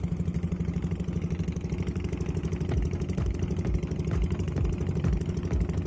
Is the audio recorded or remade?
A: recorded